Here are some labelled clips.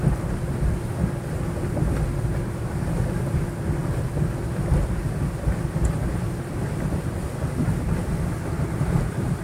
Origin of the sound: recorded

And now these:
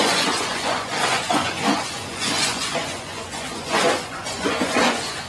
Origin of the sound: remade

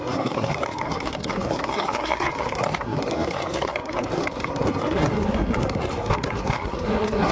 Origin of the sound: remade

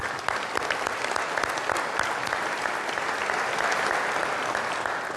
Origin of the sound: recorded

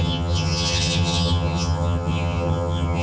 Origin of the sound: remade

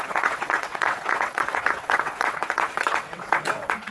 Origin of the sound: remade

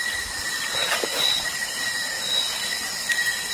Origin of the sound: recorded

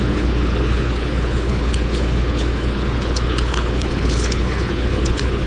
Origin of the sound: remade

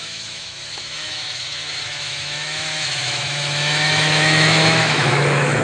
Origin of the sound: remade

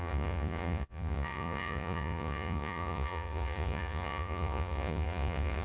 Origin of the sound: remade